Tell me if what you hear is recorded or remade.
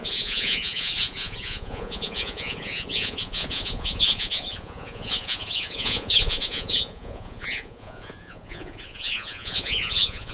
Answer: remade